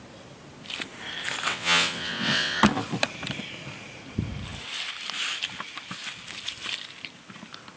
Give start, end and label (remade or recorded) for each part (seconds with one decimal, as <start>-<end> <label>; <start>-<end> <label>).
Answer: 0.0-1.5 recorded; 1.5-2.6 remade; 2.6-7.8 recorded